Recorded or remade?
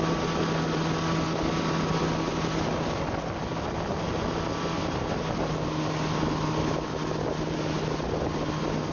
recorded